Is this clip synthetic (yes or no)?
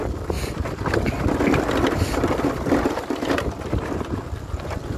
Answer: no